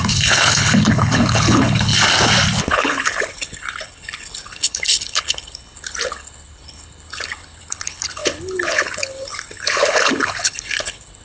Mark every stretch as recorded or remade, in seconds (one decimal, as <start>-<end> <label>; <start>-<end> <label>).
0.0-1.9 remade; 1.9-2.6 recorded; 2.6-11.2 remade